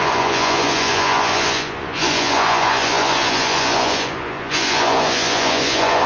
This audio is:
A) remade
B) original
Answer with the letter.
A